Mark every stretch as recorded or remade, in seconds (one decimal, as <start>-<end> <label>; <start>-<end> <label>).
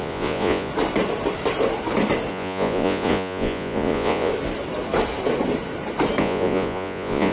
0.0-0.7 remade; 0.7-2.3 recorded; 2.3-4.3 remade; 4.3-6.2 recorded; 6.2-7.3 remade